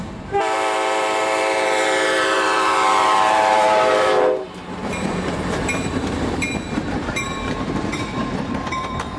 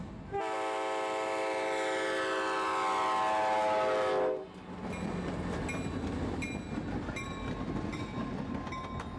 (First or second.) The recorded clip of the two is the second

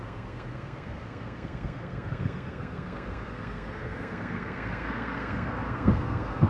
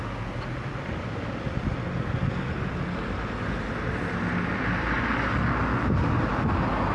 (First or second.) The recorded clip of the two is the second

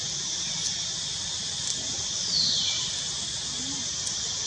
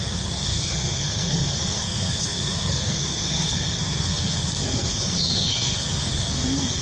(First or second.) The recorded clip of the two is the first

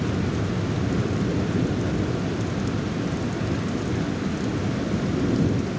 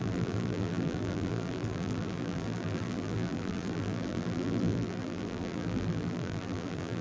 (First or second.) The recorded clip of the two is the first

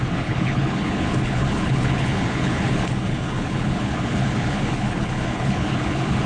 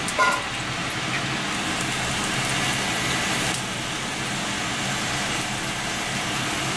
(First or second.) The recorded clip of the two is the second